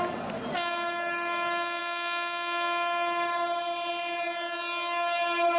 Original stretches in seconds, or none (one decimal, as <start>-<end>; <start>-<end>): 0.0-5.6